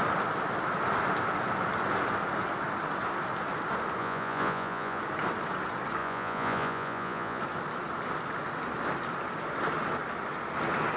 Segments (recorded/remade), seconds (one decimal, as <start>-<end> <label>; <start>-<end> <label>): 0.0-4.0 recorded; 4.0-5.0 remade; 5.0-6.0 recorded; 6.0-7.4 remade; 7.4-11.0 recorded